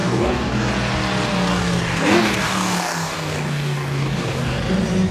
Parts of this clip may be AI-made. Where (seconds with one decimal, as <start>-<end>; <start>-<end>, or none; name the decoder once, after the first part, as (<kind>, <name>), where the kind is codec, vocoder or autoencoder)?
0.0-0.7 (codec, DAC); 1.5-4.6